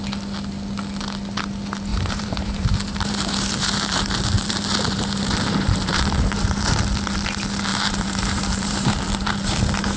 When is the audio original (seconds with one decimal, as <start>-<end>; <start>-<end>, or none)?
0.0-1.9; 6.8-7.7; 9.4-10.0